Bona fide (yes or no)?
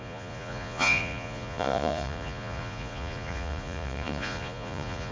no